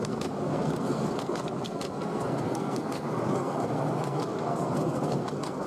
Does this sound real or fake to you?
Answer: fake